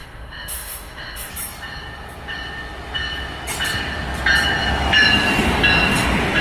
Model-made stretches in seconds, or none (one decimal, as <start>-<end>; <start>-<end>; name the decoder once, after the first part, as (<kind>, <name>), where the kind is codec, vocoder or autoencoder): 0.0-1.3 (autoencoder, DAC-VAE)